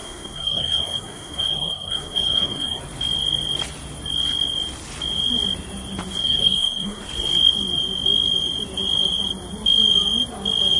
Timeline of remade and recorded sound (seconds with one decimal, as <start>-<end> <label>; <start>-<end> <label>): 0.0-2.8 remade; 2.8-6.2 recorded; 6.2-7.0 remade; 7.0-10.8 recorded